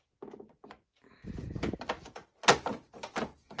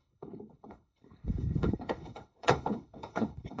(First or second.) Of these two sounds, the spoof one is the second